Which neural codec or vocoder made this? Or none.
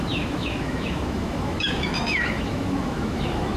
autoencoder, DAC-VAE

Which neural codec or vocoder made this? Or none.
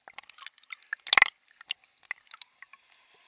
none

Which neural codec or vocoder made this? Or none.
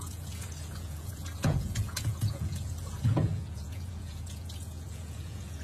vocoder, Vocos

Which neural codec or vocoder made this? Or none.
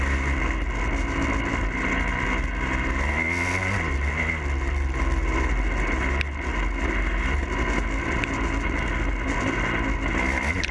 none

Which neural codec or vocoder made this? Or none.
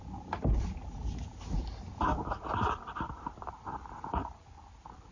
none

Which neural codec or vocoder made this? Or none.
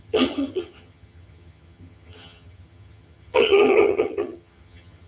vocoder, HiFi-GAN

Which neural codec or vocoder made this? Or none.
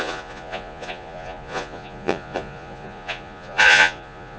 vocoder, Vocos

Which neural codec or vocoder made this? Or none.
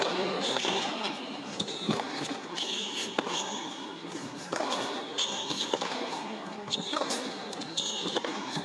codec, SNAC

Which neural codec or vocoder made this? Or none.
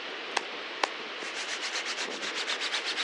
none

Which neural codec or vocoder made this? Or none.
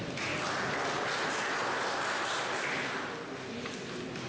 none